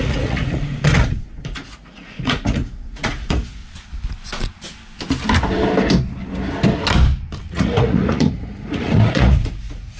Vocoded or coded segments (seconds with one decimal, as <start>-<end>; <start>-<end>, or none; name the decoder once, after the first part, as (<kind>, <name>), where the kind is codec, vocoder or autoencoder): 0.0-3.6 (vocoder, Vocos); 7.5-10.0